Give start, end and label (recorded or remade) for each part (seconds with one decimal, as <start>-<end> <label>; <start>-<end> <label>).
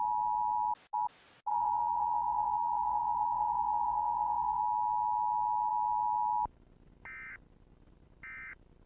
0.0-1.5 recorded; 1.5-4.6 remade; 4.6-8.9 recorded